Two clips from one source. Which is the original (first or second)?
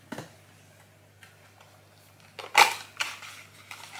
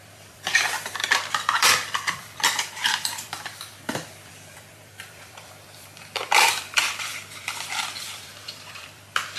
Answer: first